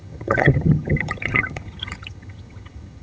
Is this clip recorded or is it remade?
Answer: remade